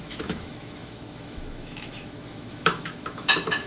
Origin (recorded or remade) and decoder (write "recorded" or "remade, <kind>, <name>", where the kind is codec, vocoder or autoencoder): remade, autoencoder, DAC-VAE